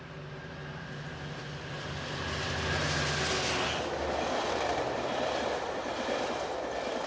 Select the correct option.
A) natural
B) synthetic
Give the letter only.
A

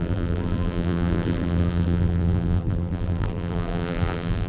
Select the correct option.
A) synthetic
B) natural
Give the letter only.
A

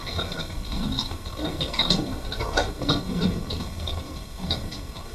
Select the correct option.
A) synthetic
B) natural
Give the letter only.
A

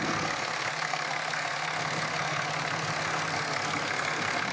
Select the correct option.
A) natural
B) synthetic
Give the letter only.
B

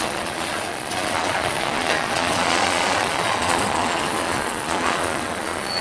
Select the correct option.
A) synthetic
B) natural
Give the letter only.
A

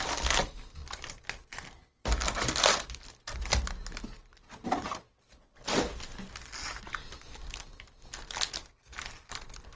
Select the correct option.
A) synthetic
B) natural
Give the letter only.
B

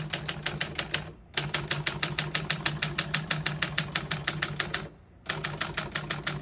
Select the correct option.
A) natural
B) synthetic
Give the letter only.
A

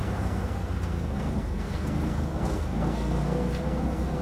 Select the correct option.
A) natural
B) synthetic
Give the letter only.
B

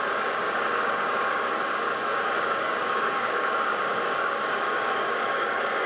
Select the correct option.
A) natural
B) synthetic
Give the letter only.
B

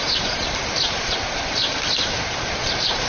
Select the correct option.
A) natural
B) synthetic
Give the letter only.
B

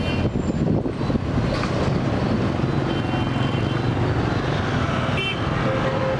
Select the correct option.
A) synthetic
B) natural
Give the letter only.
B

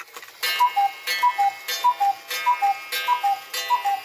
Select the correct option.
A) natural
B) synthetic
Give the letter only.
A